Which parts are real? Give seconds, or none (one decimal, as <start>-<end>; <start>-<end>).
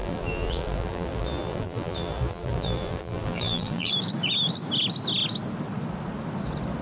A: 3.9-6.8